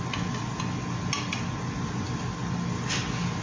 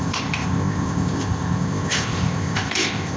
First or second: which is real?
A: first